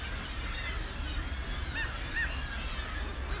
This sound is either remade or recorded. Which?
recorded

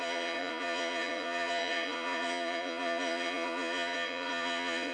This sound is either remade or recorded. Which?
remade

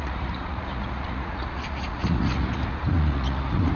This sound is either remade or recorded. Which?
remade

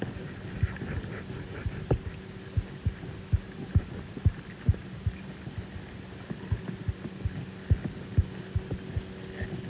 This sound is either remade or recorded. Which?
recorded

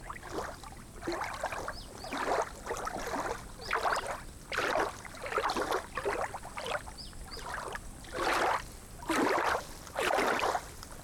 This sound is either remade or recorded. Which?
recorded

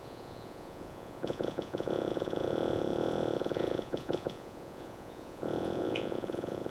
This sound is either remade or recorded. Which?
remade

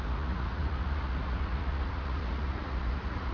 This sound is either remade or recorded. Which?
remade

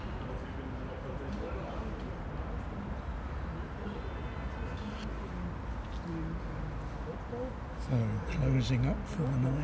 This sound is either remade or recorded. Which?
recorded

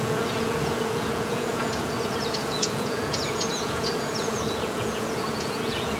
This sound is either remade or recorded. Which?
remade